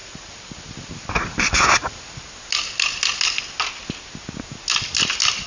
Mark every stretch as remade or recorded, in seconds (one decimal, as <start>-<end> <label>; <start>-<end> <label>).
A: 0.0-5.5 recorded